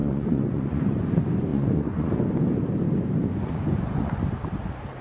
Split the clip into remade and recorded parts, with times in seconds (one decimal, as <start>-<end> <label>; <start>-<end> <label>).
0.0-1.0 remade; 1.0-1.5 recorded; 1.5-2.2 remade; 2.2-3.3 recorded; 3.3-4.2 remade; 4.2-5.0 recorded